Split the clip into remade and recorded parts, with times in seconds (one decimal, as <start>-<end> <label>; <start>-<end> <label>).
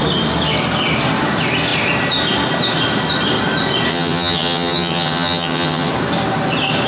0.0-3.9 recorded; 3.9-5.9 remade; 5.9-6.9 recorded